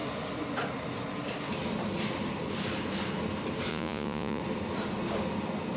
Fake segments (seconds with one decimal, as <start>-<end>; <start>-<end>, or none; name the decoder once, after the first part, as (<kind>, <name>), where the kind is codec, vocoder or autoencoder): 3.7-4.4 (vocoder, Vocos)